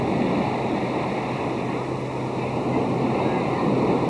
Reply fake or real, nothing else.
real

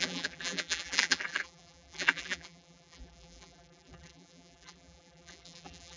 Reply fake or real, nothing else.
fake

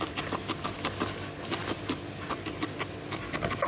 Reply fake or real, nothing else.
real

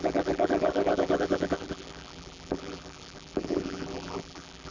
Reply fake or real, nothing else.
fake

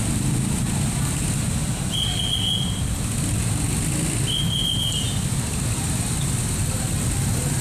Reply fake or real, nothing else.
real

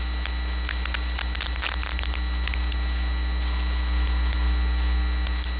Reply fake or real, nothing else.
real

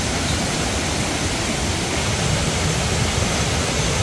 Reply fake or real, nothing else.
real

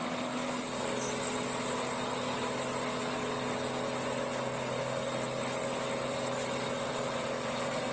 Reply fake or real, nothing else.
real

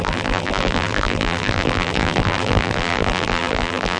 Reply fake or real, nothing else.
fake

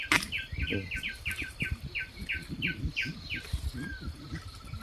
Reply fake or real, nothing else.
real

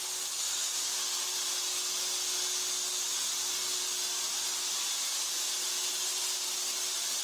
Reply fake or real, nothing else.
real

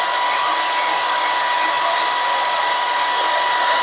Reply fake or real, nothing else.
real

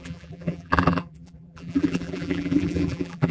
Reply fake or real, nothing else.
fake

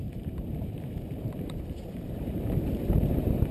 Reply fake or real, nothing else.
fake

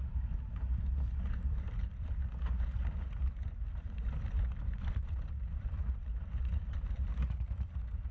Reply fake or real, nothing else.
fake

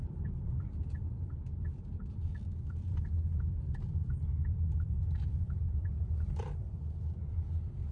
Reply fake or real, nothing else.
fake